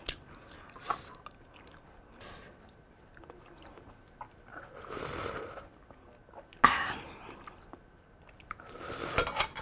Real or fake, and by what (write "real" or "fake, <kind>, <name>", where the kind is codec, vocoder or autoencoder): real